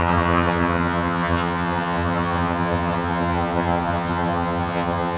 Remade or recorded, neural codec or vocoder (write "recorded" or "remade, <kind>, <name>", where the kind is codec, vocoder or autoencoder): remade, vocoder, HiFi-GAN